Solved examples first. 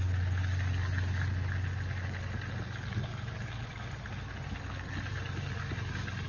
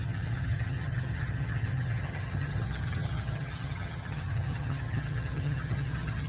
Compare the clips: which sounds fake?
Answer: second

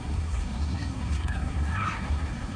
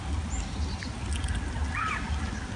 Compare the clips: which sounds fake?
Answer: first